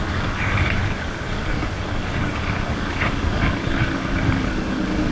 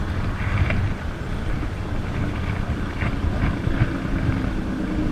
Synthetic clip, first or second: first